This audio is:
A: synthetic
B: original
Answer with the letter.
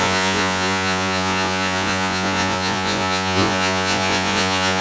A